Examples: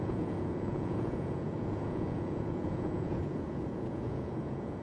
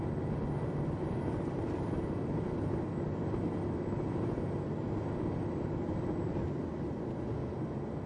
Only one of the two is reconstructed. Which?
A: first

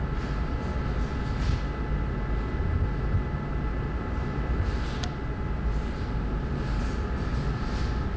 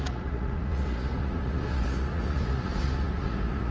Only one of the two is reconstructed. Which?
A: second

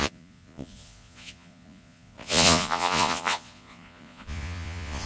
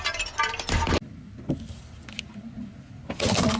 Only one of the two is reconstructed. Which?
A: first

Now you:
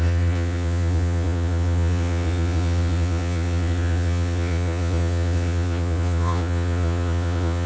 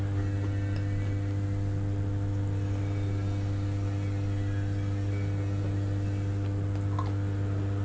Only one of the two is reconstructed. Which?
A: first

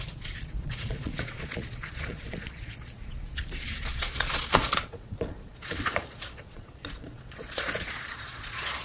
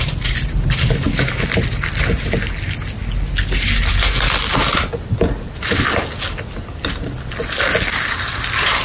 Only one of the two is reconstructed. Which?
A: first